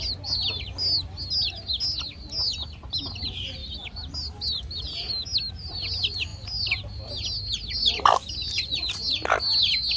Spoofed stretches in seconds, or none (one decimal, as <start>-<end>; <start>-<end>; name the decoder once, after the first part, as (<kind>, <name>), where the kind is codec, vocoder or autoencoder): none